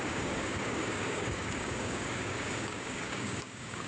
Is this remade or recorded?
remade